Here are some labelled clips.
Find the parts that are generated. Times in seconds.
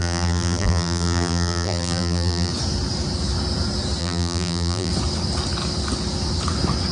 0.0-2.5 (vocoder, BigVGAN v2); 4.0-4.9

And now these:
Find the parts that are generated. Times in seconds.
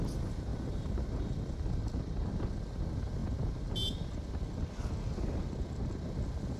0.5-2.4 (vocoder, BigVGAN v2)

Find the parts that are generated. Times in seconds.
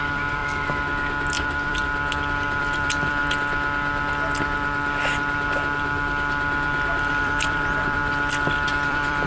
0.0-0.4 (vocoder, BigVGAN v2); 1.3-1.8; 2.6-3.2; 7.2-8.0; 8.7-9.3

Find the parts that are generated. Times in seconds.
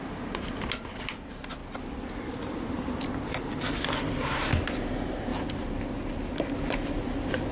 1.6-3.5 (vocoder, BigVGAN v2)